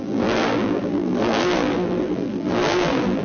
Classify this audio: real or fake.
fake